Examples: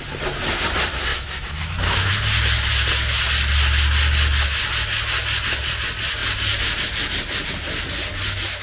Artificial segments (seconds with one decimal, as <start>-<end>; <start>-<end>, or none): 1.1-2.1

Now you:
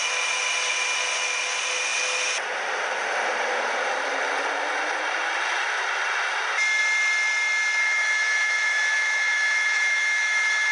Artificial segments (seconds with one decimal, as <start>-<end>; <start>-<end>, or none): 7.8-10.7

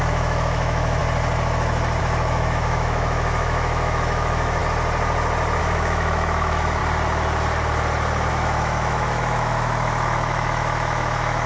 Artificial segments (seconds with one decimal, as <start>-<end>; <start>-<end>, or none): 0.0-1.0; 2.0-4.6; 5.6-6.8; 8.3-11.5

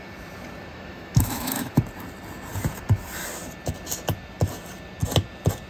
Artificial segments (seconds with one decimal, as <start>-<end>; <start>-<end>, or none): 0.7-1.8

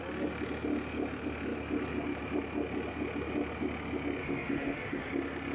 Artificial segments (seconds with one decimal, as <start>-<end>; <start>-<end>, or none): 4.2-5.1

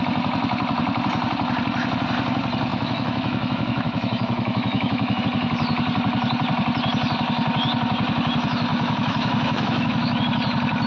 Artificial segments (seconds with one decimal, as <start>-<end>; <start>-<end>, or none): 2.7-5.2; 8.7-10.2

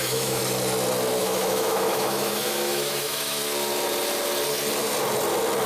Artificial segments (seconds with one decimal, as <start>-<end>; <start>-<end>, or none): 0.0-0.4; 1.2-3.4

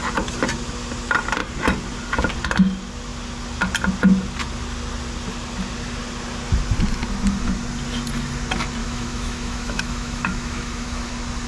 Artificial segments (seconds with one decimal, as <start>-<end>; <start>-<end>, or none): 8.8-11.1